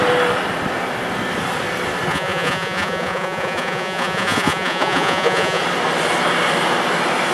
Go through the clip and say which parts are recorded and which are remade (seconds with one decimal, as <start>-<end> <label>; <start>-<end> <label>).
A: 0.0-2.1 recorded; 2.1-5.6 remade; 5.6-7.3 recorded

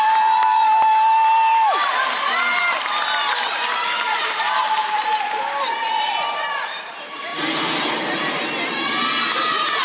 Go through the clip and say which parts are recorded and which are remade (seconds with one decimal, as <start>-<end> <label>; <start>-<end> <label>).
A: 0.0-7.3 remade; 7.3-8.7 recorded; 8.7-9.8 remade